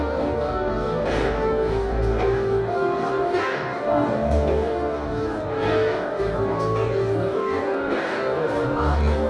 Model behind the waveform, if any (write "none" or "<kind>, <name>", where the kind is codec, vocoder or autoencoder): codec, DAC